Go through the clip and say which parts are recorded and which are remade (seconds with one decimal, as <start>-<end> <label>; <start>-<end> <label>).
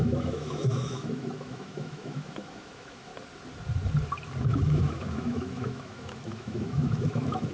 0.0-3.1 remade; 3.1-4.4 recorded; 4.4-7.5 remade